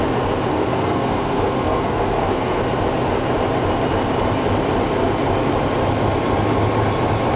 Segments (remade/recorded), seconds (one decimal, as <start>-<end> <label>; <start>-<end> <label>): 0.0-0.5 recorded; 0.5-2.6 remade; 2.6-7.4 recorded